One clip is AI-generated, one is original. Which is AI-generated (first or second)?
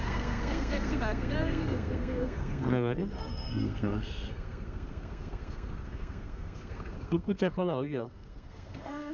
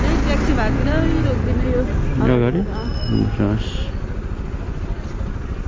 first